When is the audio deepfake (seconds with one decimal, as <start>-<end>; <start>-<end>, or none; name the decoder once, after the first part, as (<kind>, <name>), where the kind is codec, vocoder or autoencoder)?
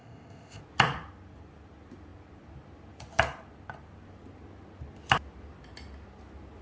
0.0-0.6 (codec, ZipCodec)